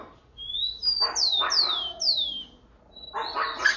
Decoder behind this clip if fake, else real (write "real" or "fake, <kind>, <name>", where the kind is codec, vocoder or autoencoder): real